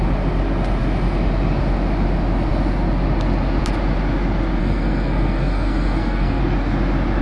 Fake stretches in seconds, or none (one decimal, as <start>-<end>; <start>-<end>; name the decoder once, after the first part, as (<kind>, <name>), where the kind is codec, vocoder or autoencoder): 4.6-6.4 (codec, SNAC)